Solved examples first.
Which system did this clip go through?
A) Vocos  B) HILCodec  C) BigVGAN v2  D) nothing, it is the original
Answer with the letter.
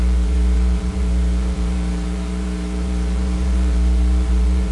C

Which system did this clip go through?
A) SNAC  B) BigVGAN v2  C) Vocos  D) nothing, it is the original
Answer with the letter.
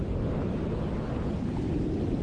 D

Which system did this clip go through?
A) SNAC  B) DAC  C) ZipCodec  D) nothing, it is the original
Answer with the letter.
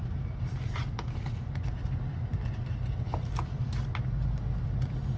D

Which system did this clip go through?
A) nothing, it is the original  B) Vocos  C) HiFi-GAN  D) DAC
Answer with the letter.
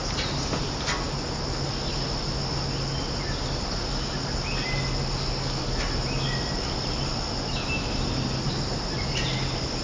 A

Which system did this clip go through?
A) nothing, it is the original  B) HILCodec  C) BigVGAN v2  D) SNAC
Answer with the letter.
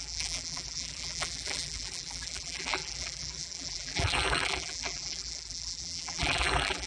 C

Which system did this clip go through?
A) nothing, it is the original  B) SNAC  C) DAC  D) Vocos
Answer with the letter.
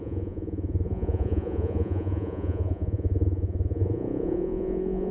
D